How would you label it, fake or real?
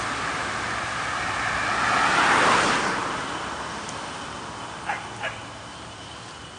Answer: real